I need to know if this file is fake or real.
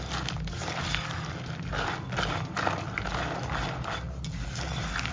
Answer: real